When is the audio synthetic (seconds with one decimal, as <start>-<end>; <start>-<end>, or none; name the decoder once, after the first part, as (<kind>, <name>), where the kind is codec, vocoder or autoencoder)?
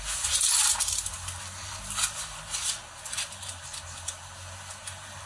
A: none